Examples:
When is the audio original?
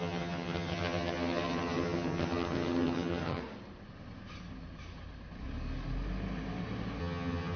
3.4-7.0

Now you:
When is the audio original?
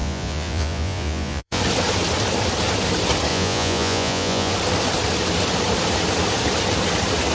1.6-3.3; 4.5-7.3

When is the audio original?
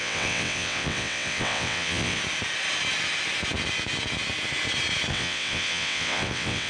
2.2-5.1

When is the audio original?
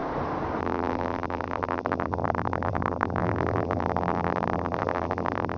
0.0-0.6